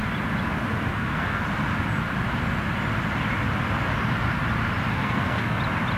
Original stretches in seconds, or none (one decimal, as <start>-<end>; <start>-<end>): 0.0-0.9; 1.4-4.9; 5.6-6.0